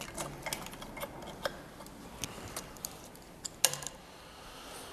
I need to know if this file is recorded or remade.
recorded